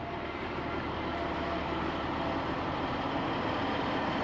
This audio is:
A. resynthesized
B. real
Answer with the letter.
B